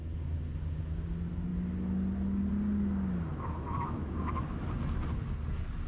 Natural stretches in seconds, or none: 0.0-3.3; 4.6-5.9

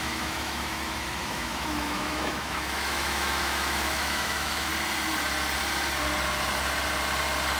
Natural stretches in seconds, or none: 4.7-7.6

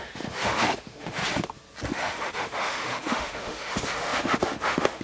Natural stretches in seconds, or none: 1.2-1.9

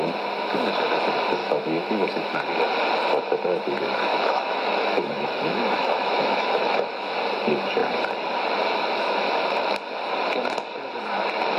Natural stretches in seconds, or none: 0.0-1.4; 2.1-4.1; 7.1-11.6

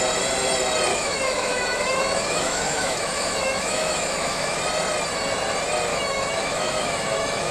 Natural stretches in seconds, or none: 0.0-0.9; 4.6-5.9

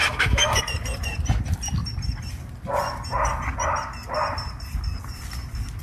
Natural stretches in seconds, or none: 0.6-5.8